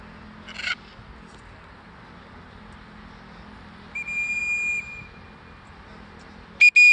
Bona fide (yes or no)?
yes